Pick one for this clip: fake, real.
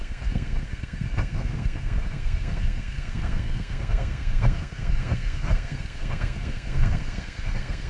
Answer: fake